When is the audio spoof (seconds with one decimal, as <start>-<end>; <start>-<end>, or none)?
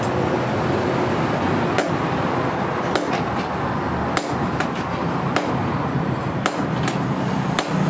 none